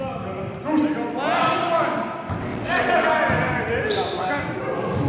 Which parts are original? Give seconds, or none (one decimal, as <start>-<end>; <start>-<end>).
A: 0.0-2.5; 3.1-5.1